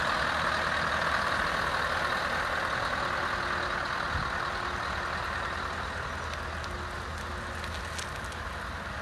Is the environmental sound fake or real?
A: real